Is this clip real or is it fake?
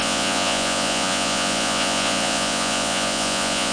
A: fake